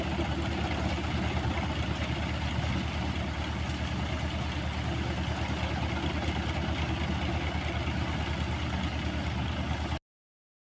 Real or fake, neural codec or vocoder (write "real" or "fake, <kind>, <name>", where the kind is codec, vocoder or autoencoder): real